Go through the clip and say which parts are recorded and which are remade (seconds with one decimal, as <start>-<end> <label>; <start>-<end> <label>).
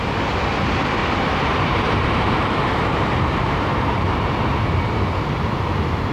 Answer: 0.0-1.0 recorded; 1.0-4.7 remade; 4.7-6.1 recorded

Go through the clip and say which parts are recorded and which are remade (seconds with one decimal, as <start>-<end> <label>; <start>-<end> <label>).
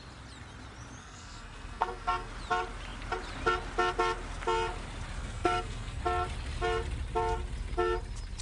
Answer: 0.0-1.0 recorded; 1.0-2.3 remade; 2.3-5.2 recorded; 5.2-6.0 remade; 6.0-8.4 recorded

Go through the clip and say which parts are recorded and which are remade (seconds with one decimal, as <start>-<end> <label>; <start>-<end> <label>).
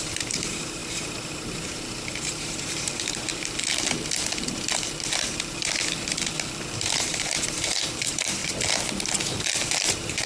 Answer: 0.0-3.3 remade; 3.3-6.8 recorded; 6.8-8.4 remade; 8.4-9.2 recorded; 9.2-10.3 remade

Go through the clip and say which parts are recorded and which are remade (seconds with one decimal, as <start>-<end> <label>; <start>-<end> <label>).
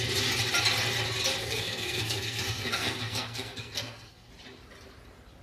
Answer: 0.0-1.4 recorded; 1.4-4.3 remade; 4.3-5.4 recorded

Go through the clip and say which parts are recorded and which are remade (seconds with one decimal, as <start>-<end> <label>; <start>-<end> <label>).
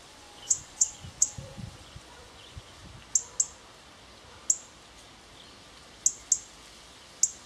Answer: 0.0-2.8 remade; 2.8-7.5 recorded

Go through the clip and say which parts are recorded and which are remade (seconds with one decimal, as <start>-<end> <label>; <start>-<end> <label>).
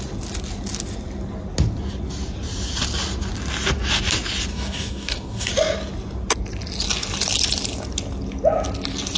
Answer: 0.0-4.5 recorded; 4.5-5.5 remade; 5.5-9.2 recorded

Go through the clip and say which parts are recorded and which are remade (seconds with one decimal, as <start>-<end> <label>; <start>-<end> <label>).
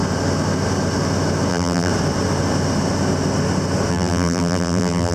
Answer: 0.0-1.5 recorded; 1.5-1.9 remade; 1.9-3.9 recorded; 3.9-5.1 remade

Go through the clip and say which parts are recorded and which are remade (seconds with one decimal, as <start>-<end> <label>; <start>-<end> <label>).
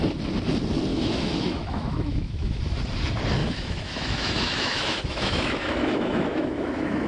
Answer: 0.0-0.9 recorded; 0.9-2.6 remade; 2.6-3.4 recorded; 3.4-7.1 remade